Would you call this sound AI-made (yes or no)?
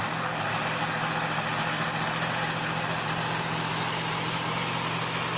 no